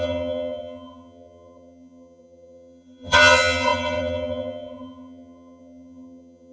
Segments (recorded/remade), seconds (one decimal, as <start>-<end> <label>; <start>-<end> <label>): 0.0-6.5 remade